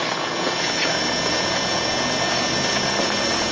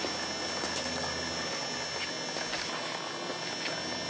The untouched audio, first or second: second